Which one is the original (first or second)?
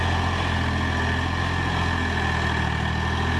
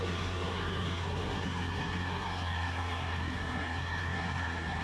first